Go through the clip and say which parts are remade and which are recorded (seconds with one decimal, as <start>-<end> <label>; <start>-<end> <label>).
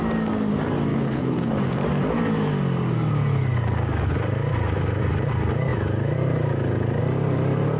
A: 0.0-0.9 recorded; 0.9-1.5 remade; 1.5-7.8 recorded